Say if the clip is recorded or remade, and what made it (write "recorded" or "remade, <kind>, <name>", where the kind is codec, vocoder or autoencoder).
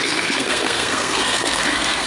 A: remade, codec, SNAC